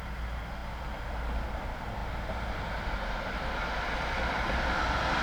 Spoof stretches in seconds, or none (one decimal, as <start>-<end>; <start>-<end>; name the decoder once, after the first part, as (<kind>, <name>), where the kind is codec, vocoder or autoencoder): none